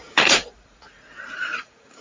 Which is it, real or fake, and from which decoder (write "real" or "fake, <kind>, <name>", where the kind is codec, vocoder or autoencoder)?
fake, vocoder, Vocos